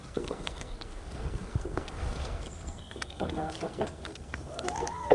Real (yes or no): no